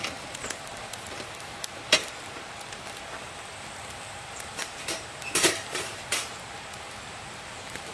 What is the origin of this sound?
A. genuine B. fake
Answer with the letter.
B